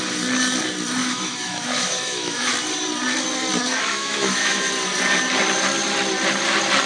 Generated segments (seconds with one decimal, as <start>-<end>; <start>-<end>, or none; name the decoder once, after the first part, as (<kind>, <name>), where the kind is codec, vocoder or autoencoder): 1.0-2.5 (autoencoder, DAC-VAE); 3.7-4.7